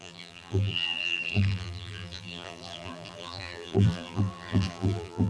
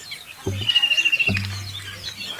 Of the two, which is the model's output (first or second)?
first